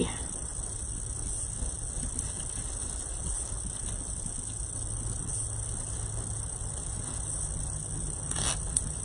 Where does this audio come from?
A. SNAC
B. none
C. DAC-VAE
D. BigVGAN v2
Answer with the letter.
B